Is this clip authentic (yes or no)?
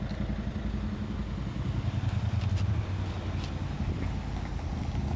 yes